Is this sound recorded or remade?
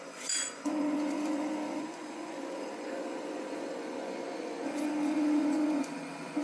remade